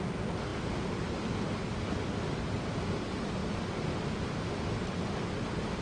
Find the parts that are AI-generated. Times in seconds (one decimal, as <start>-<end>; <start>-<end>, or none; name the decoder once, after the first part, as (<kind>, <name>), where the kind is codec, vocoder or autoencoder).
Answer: none